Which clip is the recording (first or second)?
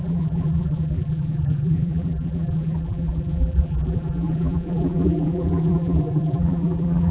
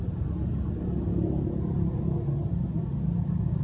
second